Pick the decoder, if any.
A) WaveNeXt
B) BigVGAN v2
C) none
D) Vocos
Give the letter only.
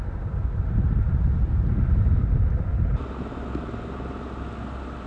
C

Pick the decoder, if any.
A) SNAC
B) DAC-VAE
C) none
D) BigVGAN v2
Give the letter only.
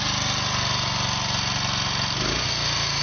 C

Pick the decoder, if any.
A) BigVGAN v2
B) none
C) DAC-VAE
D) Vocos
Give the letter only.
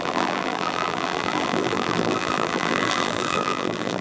A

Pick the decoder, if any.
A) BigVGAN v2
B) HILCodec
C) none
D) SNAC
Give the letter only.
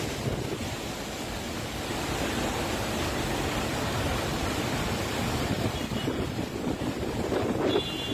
C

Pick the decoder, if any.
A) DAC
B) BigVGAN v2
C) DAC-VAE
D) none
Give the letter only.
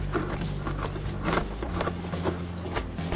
D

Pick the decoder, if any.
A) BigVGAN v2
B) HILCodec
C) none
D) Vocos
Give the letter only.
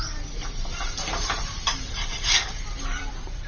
A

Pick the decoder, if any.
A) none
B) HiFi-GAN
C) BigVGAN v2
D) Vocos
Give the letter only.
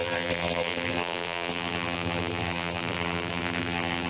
C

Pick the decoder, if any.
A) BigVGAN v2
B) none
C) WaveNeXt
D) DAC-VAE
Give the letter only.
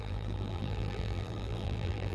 A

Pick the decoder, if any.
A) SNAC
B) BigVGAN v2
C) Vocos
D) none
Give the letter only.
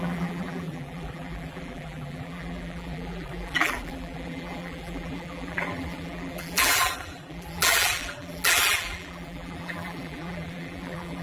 B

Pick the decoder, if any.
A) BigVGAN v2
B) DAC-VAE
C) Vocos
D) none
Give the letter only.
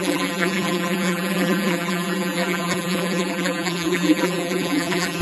A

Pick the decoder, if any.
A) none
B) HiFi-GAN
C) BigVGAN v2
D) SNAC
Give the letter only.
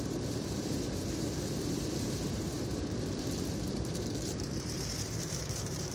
C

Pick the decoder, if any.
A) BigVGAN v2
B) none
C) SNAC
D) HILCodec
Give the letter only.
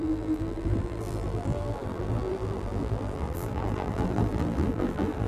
A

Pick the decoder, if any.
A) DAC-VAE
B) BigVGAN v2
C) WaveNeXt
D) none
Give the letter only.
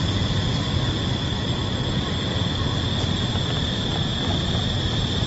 D